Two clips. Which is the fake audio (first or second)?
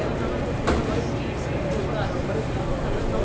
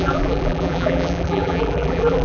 second